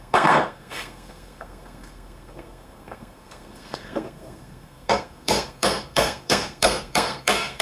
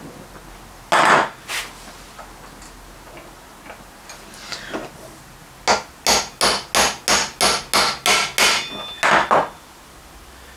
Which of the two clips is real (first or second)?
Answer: second